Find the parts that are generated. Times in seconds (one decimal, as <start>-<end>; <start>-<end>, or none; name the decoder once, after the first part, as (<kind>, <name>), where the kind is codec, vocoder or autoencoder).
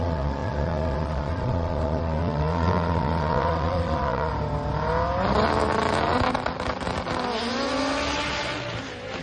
0.0-4.3 (vocoder, Vocos)